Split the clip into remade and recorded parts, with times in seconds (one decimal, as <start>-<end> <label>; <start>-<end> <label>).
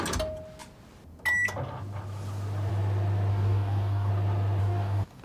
0.0-3.3 recorded; 3.3-4.1 remade; 4.1-4.6 recorded; 4.6-5.2 remade